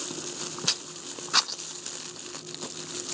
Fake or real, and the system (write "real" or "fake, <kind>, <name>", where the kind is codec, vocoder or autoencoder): real